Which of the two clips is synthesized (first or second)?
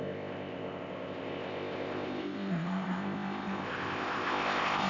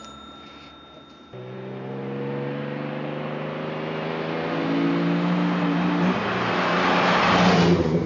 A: first